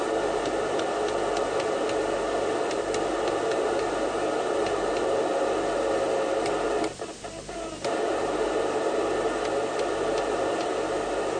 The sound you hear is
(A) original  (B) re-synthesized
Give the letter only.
A